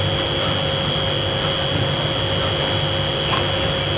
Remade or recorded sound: recorded